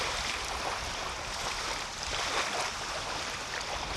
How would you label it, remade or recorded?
remade